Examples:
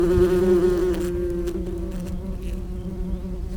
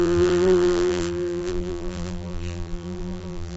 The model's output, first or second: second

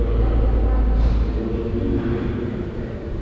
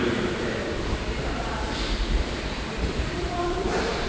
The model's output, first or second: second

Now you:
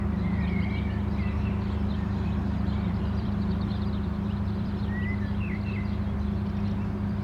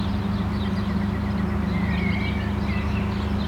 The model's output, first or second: first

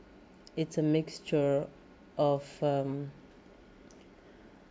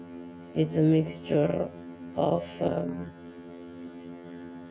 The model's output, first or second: second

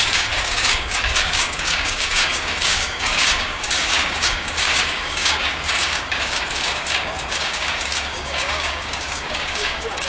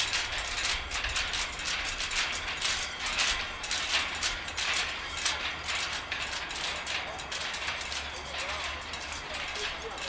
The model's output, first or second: first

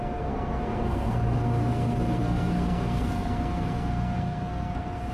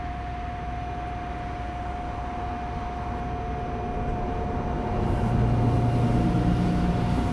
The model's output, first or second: first